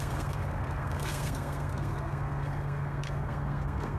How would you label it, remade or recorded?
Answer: remade